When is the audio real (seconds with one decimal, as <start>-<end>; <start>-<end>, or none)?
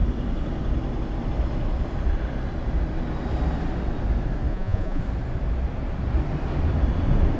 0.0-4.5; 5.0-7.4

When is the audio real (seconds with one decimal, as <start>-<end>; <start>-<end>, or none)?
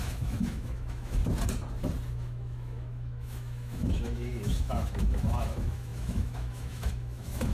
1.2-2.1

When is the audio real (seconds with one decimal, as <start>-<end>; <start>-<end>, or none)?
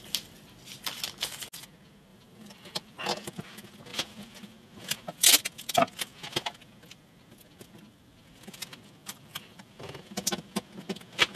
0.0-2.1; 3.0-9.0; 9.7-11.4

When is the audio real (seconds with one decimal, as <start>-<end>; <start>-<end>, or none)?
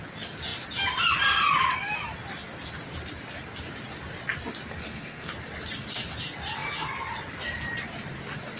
0.0-4.7; 5.3-8.6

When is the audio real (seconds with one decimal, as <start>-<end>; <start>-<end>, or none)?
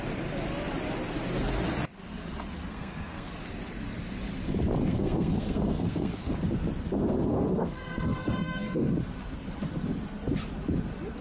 0.0-2.7; 3.3-4.8; 6.3-7.0; 8.9-11.2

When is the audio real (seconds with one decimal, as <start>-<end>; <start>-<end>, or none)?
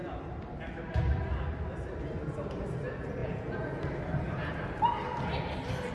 0.0-3.2; 3.8-5.9